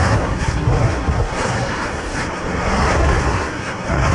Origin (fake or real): fake